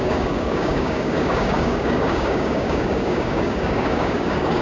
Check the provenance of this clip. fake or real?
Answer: fake